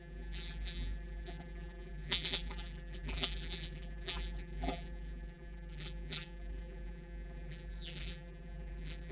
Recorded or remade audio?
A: remade